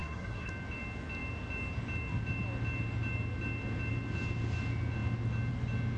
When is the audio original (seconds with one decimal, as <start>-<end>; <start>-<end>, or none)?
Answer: 0.5-6.0